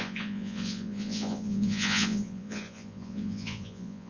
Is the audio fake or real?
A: fake